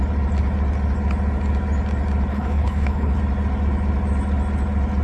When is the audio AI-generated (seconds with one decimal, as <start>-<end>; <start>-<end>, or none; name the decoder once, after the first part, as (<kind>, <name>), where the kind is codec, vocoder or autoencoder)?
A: 2.3-3.2 (codec, HILCodec)